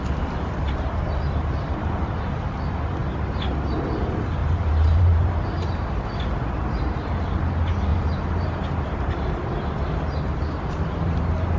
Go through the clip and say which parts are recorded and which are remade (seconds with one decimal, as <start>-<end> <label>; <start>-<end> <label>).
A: 0.0-4.4 recorded; 4.4-6.2 remade; 6.2-7.9 recorded; 7.9-11.2 remade; 11.2-11.6 recorded